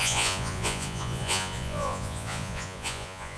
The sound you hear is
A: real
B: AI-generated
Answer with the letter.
B